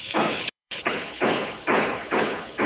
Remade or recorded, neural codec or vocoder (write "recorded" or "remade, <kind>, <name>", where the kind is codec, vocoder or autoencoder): remade, codec, HILCodec